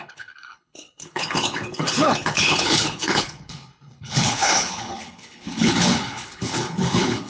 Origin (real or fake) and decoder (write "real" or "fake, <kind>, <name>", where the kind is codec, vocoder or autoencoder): fake, codec, HILCodec